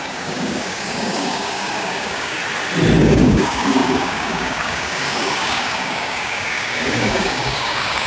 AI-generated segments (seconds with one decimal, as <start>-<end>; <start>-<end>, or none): 0.0-2.4; 3.0-8.1